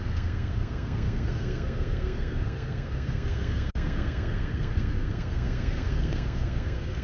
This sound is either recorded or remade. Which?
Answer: remade